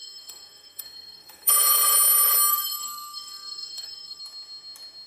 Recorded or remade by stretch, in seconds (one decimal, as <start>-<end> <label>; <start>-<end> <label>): 0.0-1.5 remade; 1.5-2.5 recorded; 2.5-4.2 remade; 4.2-5.1 recorded